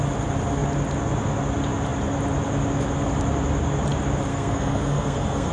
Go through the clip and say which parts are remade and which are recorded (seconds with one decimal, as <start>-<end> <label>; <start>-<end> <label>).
0.0-4.3 recorded; 4.3-5.5 remade